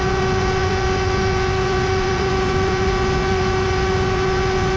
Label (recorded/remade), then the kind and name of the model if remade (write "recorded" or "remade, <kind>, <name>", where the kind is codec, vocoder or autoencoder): remade, vocoder, Vocos